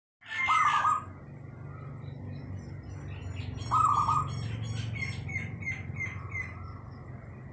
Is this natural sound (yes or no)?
yes